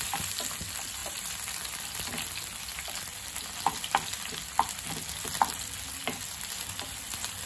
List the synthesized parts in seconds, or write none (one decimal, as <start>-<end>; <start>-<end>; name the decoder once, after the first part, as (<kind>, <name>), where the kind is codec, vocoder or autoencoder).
1.0-1.8 (vocoder, BigVGAN v2); 2.7-3.2